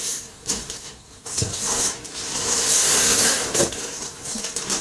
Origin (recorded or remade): remade